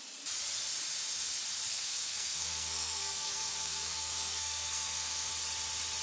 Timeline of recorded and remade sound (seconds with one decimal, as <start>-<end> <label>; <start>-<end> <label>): 0.0-1.7 recorded; 1.7-5.3 remade; 5.3-6.0 recorded